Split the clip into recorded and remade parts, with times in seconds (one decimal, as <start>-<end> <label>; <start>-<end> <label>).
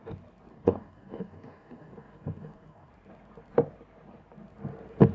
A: 0.0-0.5 recorded; 0.5-2.9 remade; 2.9-5.1 recorded